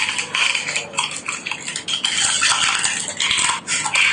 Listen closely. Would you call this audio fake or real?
real